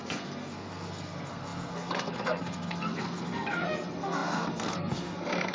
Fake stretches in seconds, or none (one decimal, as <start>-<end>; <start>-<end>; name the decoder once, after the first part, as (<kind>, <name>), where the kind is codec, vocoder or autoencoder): 0.0-5.5 (codec, SNAC)